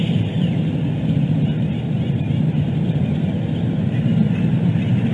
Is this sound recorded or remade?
remade